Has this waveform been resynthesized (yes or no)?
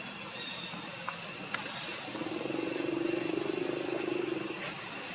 no